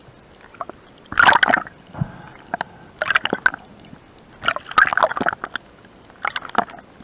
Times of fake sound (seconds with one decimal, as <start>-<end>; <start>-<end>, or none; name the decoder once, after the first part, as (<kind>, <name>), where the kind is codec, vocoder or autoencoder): none